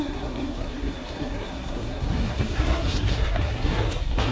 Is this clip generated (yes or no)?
yes